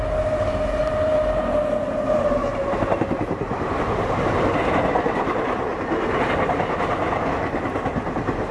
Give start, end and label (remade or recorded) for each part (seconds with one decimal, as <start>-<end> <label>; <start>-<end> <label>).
0.0-0.8 recorded; 0.8-3.7 remade; 3.7-8.5 recorded

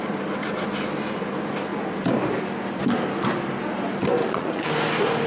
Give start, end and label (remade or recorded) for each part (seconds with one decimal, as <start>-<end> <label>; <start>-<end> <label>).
0.0-4.2 recorded; 4.2-4.7 remade; 4.7-5.3 recorded

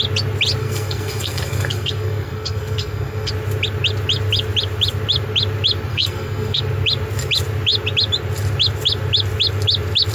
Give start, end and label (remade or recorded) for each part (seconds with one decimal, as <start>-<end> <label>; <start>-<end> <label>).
0.0-0.6 recorded; 0.6-3.3 remade; 3.3-5.9 recorded; 5.9-6.6 remade; 6.6-10.1 recorded

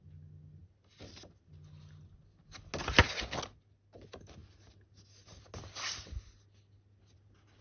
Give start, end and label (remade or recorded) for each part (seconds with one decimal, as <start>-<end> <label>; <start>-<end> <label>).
0.0-7.6 recorded